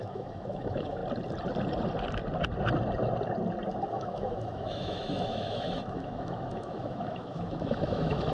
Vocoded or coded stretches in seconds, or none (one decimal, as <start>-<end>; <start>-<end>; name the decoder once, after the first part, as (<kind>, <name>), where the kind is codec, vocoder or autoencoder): 0.0-1.0 (autoencoder, DAC-VAE); 3.9-8.3